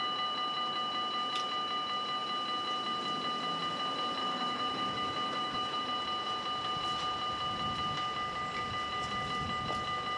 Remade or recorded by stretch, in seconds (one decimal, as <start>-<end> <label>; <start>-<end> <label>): 0.0-4.2 recorded; 4.2-5.8 remade; 5.8-10.2 recorded

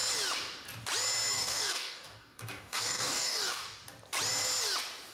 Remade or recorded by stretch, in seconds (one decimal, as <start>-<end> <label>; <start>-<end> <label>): 0.0-1.3 recorded; 1.3-3.8 remade; 3.8-5.1 recorded

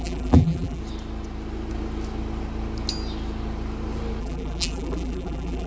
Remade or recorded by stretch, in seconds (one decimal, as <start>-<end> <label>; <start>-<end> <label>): 0.0-0.8 remade; 0.8-4.2 recorded; 4.2-5.7 remade

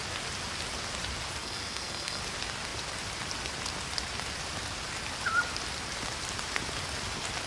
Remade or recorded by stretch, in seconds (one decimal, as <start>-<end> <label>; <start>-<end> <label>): 0.0-1.4 recorded; 1.4-2.2 remade; 2.2-7.5 recorded

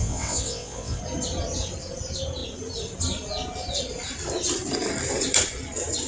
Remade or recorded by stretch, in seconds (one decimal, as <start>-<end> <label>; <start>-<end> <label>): 0.0-1.0 remade; 1.0-6.1 recorded

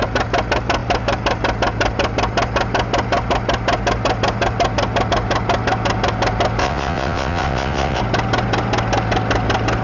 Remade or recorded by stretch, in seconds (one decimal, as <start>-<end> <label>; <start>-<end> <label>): 0.0-6.6 recorded; 6.6-8.0 remade; 8.0-9.8 recorded